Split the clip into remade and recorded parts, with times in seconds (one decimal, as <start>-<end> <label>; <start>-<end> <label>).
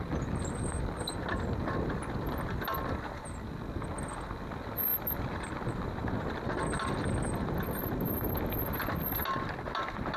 0.0-10.2 recorded